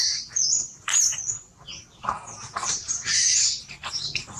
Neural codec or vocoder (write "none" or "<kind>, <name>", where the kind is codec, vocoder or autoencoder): vocoder, BigVGAN v2